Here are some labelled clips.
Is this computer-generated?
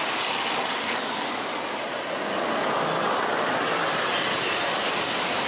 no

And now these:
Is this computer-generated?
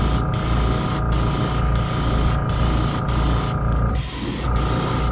no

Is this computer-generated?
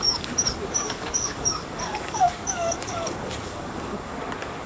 yes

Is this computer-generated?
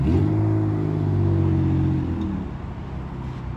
no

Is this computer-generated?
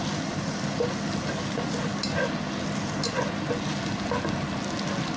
no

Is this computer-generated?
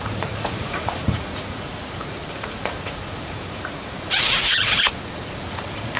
yes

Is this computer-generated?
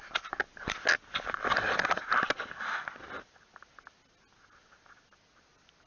no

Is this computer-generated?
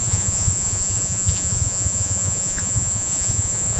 yes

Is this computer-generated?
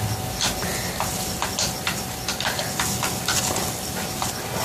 no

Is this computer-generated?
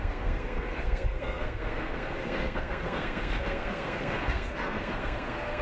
yes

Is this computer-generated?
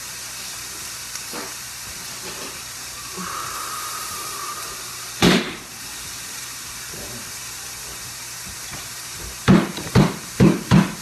yes